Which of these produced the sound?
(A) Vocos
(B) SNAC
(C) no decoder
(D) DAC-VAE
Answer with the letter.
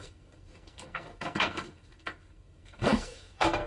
B